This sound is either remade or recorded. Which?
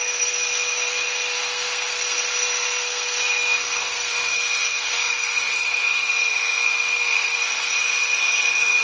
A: remade